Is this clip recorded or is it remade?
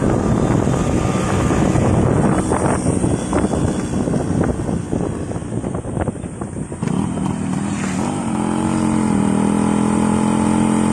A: recorded